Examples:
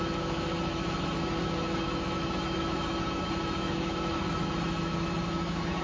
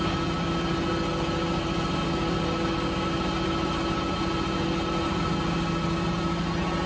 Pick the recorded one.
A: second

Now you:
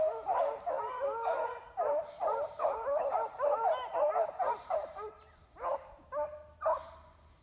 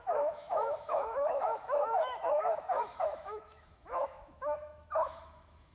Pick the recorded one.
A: first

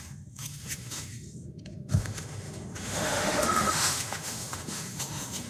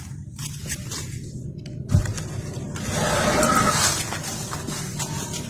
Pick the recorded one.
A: second